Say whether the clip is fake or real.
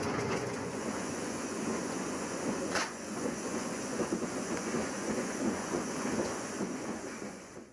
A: fake